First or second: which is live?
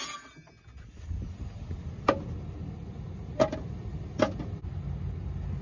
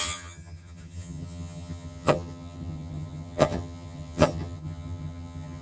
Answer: first